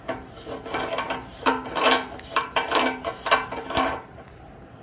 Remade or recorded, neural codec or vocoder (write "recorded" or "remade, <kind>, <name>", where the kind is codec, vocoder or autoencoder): remade, vocoder, BigVGAN v2